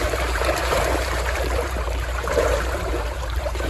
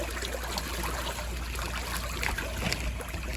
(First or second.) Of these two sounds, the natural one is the second